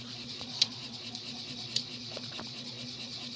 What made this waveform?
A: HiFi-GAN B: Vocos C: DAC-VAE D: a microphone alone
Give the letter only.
B